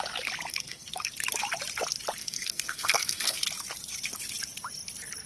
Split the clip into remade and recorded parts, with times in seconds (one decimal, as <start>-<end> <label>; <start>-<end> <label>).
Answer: 0.0-0.5 recorded; 0.5-1.1 remade; 1.1-2.2 recorded; 2.2-3.4 remade; 3.4-5.3 recorded